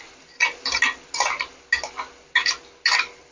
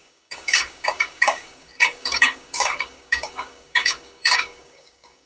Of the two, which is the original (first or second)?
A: first